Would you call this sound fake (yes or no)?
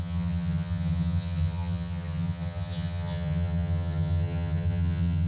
yes